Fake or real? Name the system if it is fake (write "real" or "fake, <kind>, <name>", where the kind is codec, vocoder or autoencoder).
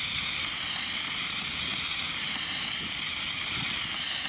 fake, vocoder, BigVGAN v2